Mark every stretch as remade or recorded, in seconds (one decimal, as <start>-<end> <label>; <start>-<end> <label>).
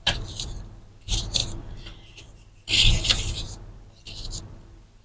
0.0-5.0 remade